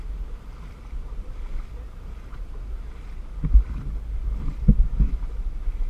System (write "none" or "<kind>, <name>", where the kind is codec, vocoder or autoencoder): none